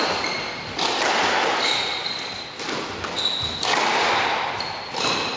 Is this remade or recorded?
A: recorded